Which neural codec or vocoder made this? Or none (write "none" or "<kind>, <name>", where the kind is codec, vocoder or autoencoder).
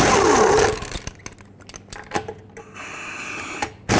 none